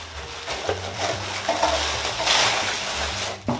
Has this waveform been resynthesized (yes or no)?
no